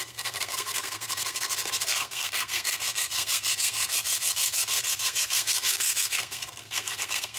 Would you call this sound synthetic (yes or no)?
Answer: yes